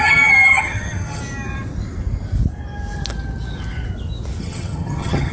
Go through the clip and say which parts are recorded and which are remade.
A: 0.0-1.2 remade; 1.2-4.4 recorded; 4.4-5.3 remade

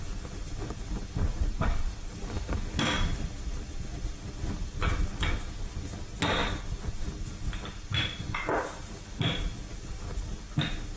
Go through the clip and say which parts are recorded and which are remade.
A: 0.0-11.0 recorded

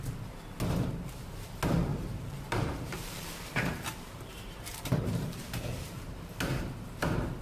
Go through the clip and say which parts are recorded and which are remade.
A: 0.0-1.9 recorded; 1.9-6.3 remade; 6.3-7.4 recorded

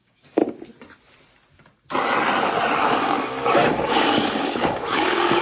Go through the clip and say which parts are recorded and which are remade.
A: 0.0-0.4 remade; 0.4-3.0 recorded; 3.0-5.4 remade

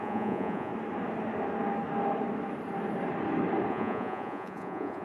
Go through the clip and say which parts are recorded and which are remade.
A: 0.0-0.7 remade; 0.7-3.7 recorded; 3.7-5.0 remade